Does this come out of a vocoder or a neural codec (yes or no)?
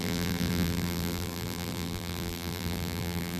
yes